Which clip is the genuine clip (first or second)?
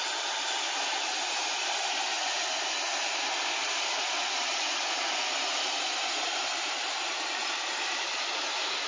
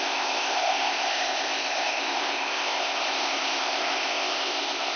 first